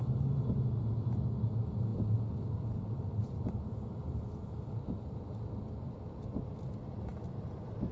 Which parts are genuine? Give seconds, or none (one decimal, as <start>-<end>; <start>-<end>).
0.0-7.9